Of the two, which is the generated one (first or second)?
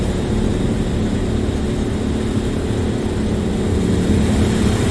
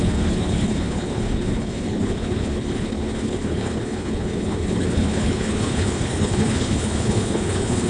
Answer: second